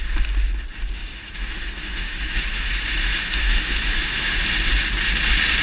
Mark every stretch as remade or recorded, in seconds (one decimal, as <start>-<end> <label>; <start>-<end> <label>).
0.0-1.0 recorded; 1.0-4.4 remade; 4.4-5.6 recorded